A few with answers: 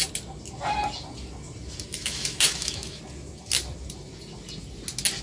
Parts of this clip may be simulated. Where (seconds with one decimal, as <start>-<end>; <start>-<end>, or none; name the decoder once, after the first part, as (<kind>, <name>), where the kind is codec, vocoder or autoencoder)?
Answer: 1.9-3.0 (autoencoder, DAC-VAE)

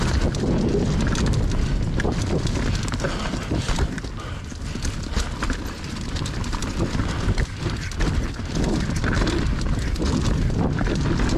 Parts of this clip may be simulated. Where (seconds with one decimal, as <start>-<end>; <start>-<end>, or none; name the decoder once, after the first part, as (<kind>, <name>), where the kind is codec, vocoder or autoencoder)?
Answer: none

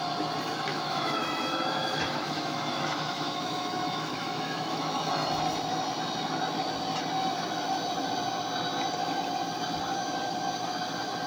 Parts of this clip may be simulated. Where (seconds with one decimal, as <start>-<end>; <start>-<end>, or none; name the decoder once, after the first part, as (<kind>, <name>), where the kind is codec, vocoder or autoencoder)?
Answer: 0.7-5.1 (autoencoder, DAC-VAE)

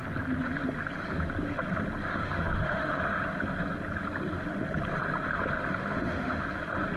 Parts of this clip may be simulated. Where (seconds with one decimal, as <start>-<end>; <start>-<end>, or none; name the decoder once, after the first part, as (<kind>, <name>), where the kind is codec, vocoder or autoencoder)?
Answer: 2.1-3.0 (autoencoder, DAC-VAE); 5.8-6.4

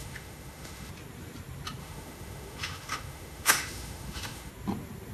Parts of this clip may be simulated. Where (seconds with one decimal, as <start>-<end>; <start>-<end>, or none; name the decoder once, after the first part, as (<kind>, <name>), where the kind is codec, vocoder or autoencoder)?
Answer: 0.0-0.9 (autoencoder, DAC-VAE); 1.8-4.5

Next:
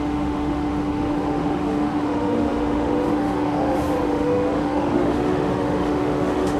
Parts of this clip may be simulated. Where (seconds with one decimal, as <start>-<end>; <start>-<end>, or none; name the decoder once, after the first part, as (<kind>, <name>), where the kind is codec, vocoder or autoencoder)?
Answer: 0.0-6.6 (autoencoder, DAC-VAE)